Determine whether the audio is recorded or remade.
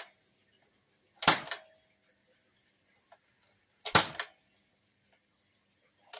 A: recorded